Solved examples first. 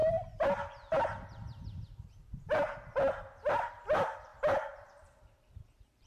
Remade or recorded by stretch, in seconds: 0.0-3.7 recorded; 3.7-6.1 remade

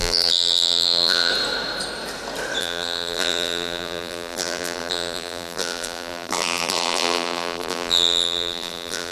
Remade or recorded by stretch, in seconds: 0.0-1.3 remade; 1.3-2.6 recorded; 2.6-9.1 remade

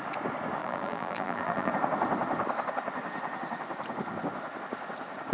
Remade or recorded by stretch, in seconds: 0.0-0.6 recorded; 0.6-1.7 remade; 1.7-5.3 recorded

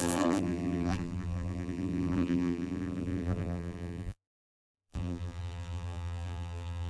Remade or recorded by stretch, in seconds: 0.0-6.9 remade